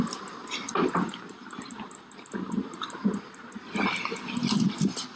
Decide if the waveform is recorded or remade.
recorded